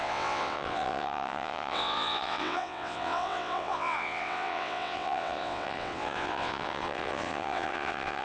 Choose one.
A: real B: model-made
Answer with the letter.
B